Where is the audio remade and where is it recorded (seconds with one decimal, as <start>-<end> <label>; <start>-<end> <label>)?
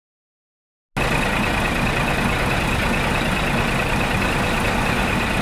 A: 0.0-5.4 recorded